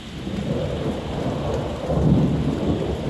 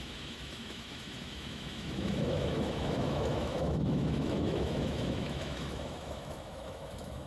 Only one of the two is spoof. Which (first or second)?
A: second